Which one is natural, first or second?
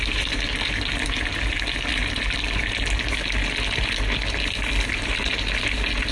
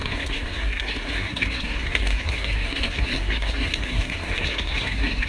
first